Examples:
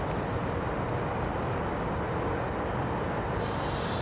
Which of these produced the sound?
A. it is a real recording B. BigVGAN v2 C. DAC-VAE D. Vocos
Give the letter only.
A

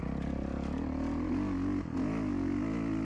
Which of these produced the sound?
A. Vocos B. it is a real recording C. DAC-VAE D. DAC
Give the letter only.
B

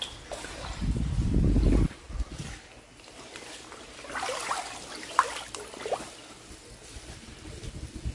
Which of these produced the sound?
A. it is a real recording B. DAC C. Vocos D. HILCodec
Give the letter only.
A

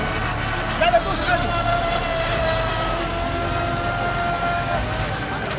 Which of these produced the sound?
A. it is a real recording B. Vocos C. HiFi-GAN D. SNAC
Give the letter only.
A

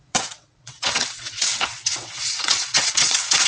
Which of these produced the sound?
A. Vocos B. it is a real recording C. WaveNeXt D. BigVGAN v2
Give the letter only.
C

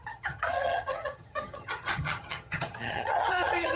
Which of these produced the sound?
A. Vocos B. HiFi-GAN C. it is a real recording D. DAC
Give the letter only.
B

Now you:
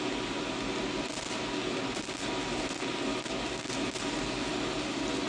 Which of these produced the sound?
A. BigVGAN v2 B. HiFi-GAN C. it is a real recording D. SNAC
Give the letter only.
C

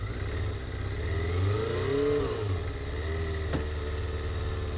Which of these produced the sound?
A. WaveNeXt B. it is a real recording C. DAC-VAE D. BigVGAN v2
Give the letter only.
B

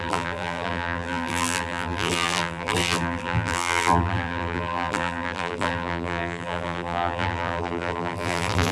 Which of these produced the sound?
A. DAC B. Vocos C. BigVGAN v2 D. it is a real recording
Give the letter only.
C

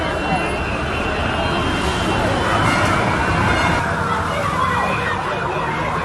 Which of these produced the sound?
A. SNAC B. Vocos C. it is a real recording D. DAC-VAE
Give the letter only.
C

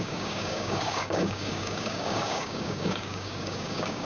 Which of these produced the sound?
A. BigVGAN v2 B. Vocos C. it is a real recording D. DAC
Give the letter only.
D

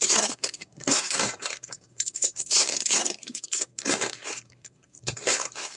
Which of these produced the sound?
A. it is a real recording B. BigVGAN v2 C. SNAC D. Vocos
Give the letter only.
C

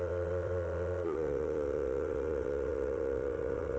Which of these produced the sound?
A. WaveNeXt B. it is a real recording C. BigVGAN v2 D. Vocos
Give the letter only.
A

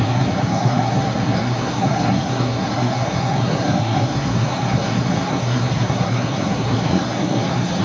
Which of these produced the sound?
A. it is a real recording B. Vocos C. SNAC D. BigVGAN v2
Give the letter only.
C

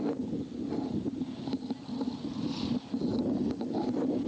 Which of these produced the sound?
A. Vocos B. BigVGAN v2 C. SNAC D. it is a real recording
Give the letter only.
D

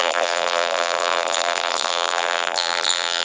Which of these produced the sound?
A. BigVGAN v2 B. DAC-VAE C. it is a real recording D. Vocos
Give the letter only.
A